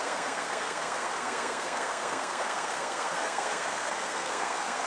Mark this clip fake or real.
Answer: fake